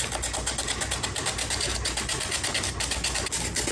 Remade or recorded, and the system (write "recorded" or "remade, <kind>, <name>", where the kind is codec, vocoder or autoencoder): recorded